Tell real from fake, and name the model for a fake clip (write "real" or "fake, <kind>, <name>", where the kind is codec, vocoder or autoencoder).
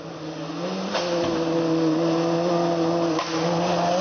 real